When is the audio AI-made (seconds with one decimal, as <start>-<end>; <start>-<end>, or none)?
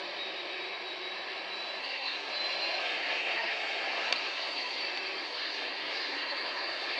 1.8-2.3; 2.8-4.8; 5.2-7.0